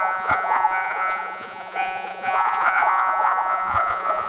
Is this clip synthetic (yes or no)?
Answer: yes